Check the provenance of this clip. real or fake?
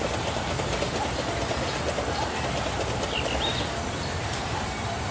real